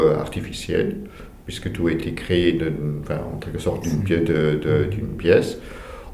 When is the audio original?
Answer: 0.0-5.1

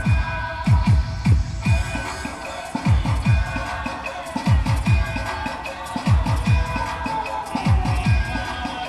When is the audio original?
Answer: 0.0-0.5; 1.0-8.9

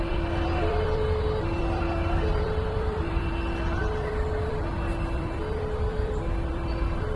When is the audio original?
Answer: 3.3-3.8

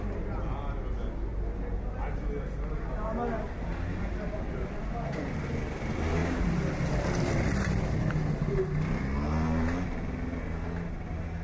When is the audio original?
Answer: 0.0-11.4

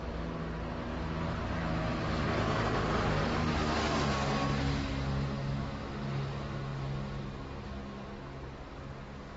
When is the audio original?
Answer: 0.0-0.9; 3.9-9.4

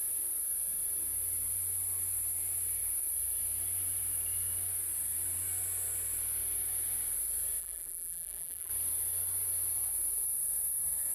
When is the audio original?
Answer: 0.0-7.6; 8.7-11.1